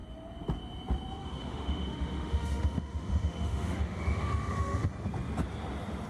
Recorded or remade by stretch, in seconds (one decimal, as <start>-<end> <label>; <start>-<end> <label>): 0.0-1.2 recorded; 1.2-4.9 remade; 4.9-6.1 recorded